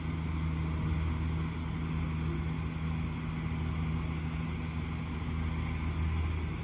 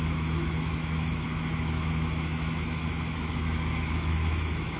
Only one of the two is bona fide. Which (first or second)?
first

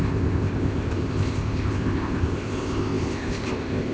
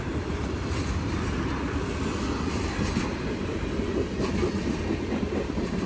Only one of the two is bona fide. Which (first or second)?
second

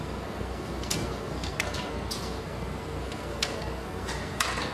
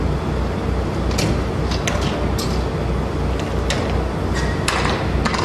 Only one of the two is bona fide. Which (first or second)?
second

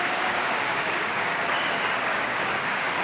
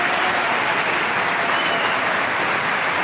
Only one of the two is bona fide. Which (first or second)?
second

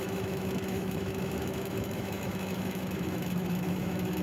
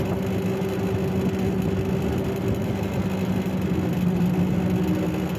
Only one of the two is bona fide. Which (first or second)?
second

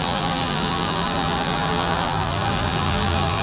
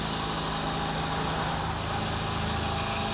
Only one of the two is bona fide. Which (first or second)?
second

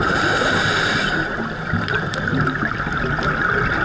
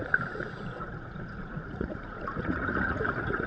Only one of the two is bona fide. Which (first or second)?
first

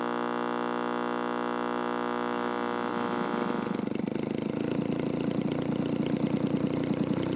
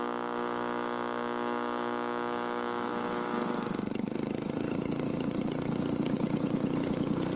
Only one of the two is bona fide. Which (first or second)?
first